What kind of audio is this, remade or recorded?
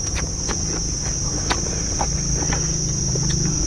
recorded